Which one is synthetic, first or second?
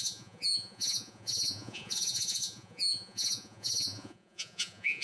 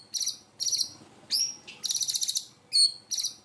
first